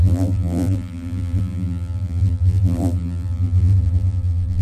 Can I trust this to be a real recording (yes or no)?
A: no